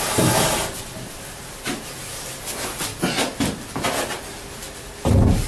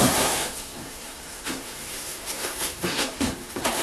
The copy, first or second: second